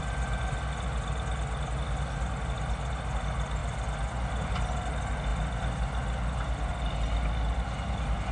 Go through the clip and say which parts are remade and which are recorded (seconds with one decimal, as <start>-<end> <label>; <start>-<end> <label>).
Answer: 0.0-8.3 recorded